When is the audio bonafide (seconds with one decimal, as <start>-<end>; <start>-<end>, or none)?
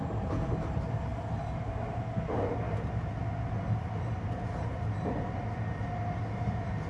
0.0-6.9